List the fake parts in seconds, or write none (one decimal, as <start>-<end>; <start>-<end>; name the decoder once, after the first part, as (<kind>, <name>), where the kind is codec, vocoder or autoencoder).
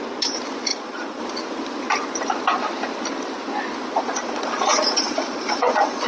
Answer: 0.7-1.2 (vocoder, Vocos); 3.9-6.1